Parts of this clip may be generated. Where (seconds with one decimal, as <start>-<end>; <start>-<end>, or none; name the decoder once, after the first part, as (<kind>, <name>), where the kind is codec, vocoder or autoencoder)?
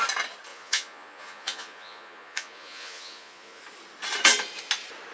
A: 0.5-3.6 (vocoder, Vocos)